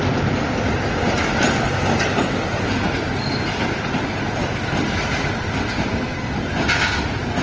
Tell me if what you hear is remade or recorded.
recorded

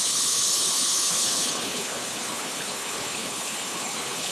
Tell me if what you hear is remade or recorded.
remade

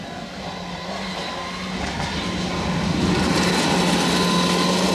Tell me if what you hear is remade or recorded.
recorded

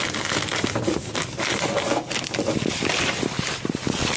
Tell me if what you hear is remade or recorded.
recorded